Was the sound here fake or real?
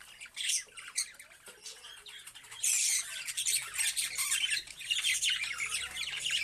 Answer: real